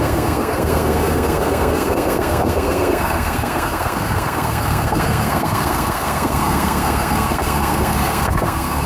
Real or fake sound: fake